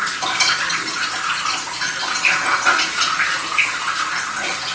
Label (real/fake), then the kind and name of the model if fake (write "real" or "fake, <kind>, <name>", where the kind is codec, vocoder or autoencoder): real